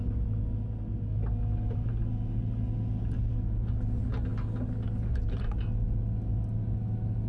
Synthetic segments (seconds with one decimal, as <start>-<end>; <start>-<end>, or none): none